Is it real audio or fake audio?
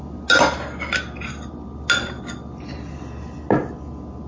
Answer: real